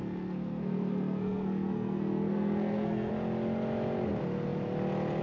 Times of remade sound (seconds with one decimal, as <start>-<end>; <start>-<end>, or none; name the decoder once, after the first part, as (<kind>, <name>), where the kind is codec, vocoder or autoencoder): 0.0-3.1 (codec, SNAC)